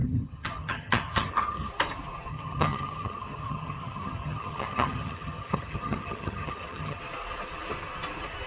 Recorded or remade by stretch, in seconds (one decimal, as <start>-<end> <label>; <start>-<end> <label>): 0.0-1.7 remade; 1.7-2.3 recorded; 2.3-7.0 remade; 7.0-8.5 recorded

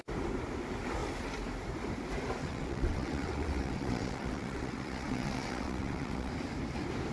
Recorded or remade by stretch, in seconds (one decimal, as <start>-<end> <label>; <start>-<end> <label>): 0.0-2.4 recorded; 2.4-6.3 remade; 6.3-7.1 recorded